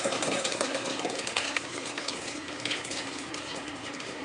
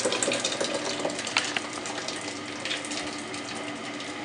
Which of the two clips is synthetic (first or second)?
first